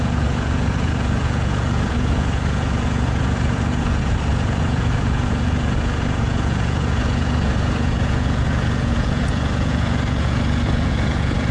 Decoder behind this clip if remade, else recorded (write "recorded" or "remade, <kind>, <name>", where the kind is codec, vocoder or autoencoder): remade, vocoder, Vocos